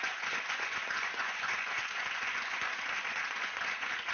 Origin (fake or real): fake